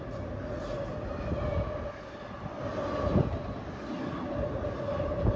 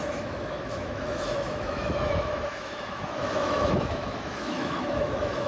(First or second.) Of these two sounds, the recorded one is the first